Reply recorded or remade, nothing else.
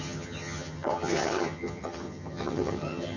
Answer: remade